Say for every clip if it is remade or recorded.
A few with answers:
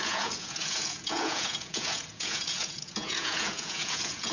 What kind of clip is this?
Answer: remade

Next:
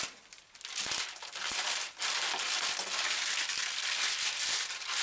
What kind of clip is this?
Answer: recorded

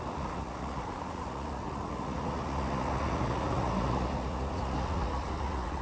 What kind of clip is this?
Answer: remade